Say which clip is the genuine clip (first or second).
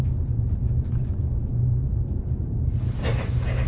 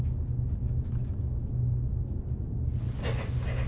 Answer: second